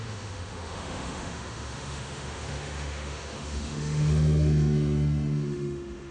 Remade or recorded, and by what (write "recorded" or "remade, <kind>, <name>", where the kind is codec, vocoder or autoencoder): remade, autoencoder, DAC-VAE